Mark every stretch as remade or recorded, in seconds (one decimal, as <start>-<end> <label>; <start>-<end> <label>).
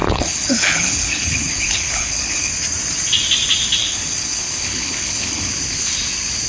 0.0-2.5 remade; 2.5-3.8 recorded; 3.8-5.5 remade; 5.5-6.5 recorded